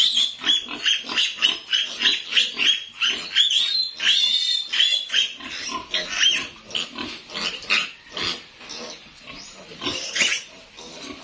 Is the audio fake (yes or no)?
no